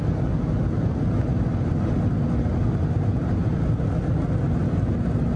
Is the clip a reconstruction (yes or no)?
no